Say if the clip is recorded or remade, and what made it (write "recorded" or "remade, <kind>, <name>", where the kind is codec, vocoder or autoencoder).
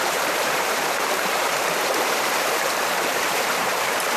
remade, vocoder, BigVGAN v2